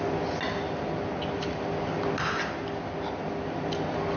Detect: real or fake real